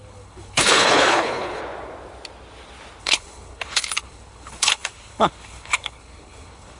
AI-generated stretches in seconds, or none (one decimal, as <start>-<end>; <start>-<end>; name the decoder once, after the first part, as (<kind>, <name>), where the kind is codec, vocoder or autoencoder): 0.0-1.6 (codec, HILCodec); 3.0-6.8